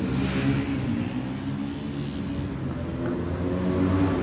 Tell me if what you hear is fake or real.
real